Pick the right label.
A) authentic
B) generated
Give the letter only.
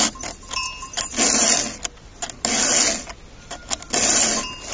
A